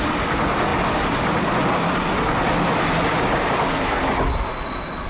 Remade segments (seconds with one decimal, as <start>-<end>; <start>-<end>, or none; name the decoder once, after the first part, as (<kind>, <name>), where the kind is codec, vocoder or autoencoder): none